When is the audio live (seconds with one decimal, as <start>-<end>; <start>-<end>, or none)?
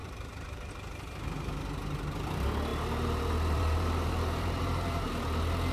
0.7-2.7; 5.2-5.7